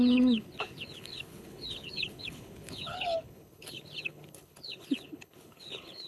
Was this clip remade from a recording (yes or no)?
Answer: yes